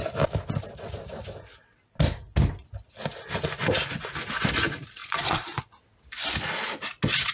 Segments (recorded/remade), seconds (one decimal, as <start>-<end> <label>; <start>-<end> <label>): 0.0-5.0 recorded; 5.0-5.6 remade; 5.6-7.3 recorded